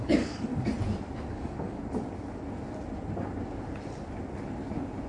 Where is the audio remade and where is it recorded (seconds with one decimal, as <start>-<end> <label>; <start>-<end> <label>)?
0.0-0.5 remade; 0.5-1.3 recorded; 1.3-1.8 remade; 1.8-5.1 recorded